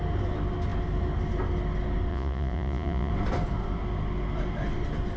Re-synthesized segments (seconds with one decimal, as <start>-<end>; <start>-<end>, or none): 2.1-3.1